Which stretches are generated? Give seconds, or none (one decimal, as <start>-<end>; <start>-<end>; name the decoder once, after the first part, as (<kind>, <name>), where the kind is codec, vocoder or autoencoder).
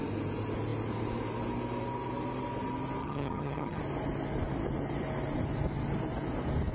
3.0-3.8 (vocoder, HiFi-GAN)